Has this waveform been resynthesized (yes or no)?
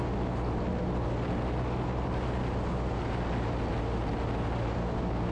no